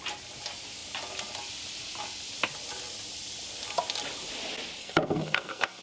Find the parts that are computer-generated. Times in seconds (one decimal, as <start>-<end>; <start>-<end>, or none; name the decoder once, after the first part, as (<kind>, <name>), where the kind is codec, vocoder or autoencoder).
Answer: 4.8-5.8 (codec, SNAC)